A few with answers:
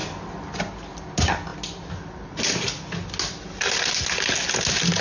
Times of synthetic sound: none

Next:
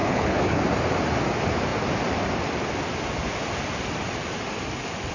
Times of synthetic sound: 0.0-0.6 (codec, HILCodec)